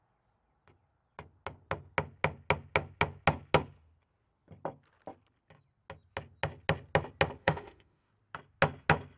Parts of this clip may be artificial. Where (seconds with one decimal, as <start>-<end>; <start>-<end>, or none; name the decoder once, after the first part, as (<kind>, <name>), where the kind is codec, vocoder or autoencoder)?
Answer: 7.4-8.1 (autoencoder, DAC-VAE)